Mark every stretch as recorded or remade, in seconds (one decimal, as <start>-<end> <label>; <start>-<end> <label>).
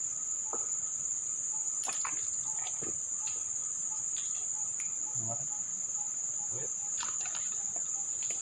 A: 0.0-5.7 recorded; 5.7-7.6 remade; 7.6-8.4 recorded